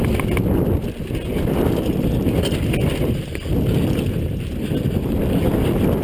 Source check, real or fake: real